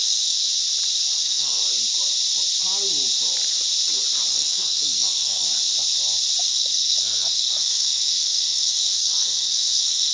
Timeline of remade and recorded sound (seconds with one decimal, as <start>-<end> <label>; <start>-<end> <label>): 0.0-0.5 remade; 0.5-1.2 recorded; 1.2-1.6 remade; 1.6-4.3 recorded; 4.3-5.5 remade; 5.5-6.4 recorded; 6.4-10.1 remade